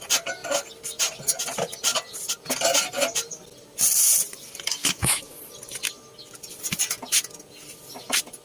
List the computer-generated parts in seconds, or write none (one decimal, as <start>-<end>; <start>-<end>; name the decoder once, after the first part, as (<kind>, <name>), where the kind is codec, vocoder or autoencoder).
4.8-5.4 (autoencoder, DAC-VAE)